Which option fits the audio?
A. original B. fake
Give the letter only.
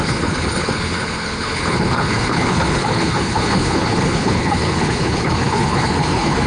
B